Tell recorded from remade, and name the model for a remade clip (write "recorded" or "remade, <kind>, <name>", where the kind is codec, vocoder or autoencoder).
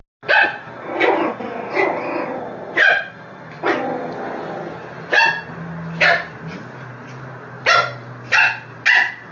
recorded